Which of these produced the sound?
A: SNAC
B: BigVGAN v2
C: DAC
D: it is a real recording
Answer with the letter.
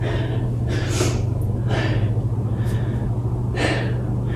D